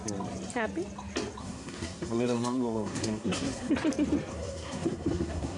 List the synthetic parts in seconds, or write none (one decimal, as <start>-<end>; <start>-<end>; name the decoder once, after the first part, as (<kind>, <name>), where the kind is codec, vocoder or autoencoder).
1.4-3.7 (codec, SNAC); 4.3-5.6